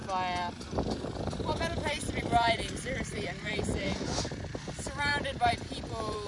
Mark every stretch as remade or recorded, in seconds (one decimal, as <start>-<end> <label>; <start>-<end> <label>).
0.0-1.4 recorded; 1.4-6.3 remade